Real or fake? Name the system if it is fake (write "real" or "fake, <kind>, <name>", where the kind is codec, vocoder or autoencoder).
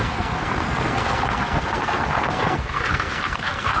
fake, codec, SNAC